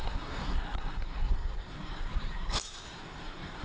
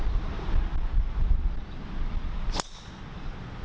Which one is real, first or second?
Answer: second